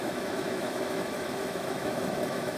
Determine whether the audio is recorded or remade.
remade